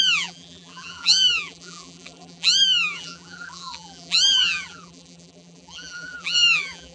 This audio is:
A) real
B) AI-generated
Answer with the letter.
B